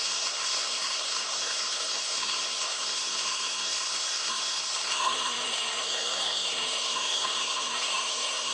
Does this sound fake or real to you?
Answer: fake